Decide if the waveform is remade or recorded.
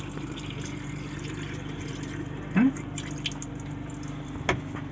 recorded